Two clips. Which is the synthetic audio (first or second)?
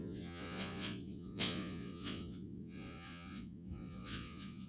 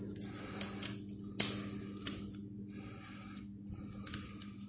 first